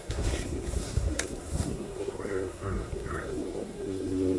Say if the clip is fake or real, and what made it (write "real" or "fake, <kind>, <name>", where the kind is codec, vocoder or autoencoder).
fake, codec, SNAC